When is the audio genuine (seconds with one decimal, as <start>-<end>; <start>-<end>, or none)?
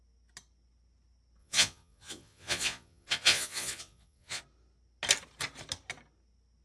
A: 0.0-1.4; 4.4-6.6